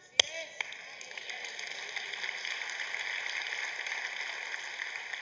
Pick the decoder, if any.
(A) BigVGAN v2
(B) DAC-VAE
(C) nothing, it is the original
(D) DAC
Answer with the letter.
C